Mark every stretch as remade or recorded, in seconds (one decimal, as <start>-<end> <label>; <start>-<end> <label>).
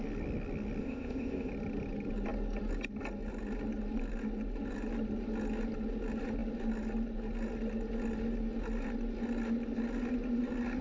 0.0-0.8 recorded; 0.8-1.5 remade; 1.5-10.8 recorded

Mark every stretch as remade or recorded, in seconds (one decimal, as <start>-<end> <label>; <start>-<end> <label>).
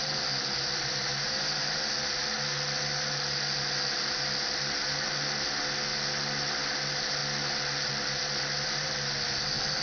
0.0-1.1 recorded; 1.1-1.8 remade; 1.8-9.8 recorded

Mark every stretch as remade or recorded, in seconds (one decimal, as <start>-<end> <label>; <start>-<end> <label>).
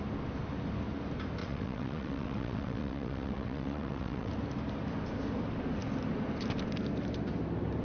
0.0-1.4 recorded; 1.4-4.3 remade; 4.3-7.8 recorded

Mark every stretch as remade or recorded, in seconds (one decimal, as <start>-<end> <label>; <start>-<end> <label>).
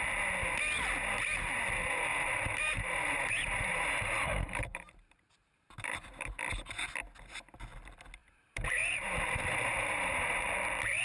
0.0-2.1 recorded; 2.1-6.4 remade; 6.4-8.2 recorded; 8.2-10.5 remade; 10.5-11.0 recorded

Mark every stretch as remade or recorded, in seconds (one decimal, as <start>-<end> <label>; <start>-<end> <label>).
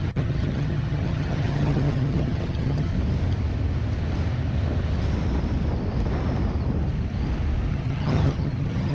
0.0-2.9 remade; 2.9-7.7 recorded; 7.7-8.9 remade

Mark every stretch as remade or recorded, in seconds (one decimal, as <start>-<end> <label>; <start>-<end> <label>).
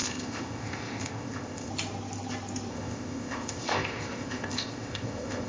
0.0-1.7 remade; 1.7-2.7 recorded; 2.7-5.5 remade